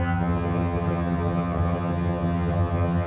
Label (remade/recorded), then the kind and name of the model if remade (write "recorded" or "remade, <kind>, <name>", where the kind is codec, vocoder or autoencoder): remade, vocoder, HiFi-GAN